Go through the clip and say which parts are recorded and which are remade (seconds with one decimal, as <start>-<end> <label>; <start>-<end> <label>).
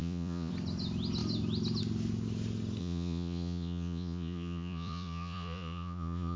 0.0-0.5 remade; 0.5-2.8 recorded; 2.8-6.4 remade